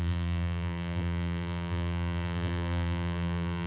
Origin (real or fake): fake